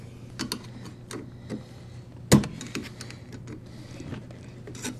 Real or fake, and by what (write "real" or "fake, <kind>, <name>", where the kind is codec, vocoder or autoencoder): real